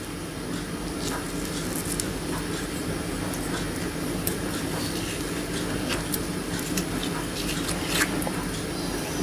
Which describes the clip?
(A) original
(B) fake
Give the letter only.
A